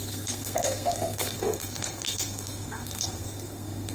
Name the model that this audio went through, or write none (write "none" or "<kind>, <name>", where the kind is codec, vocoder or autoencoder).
codec, SNAC